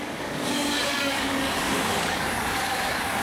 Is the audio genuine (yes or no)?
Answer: no